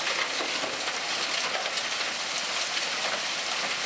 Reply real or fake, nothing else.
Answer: real